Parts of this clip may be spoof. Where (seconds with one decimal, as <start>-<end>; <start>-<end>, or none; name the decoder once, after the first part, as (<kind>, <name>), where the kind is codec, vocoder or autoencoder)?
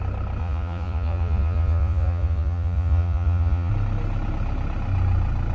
0.4-3.7 (vocoder, Vocos)